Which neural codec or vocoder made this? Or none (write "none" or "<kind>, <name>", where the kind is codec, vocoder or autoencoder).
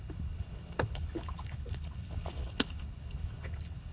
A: codec, HILCodec